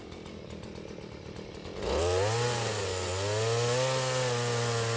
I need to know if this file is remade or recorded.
recorded